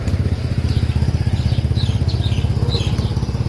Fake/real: real